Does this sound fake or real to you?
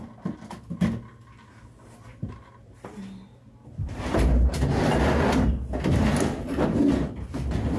real